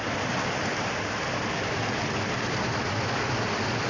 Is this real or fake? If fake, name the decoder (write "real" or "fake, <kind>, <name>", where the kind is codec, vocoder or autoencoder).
real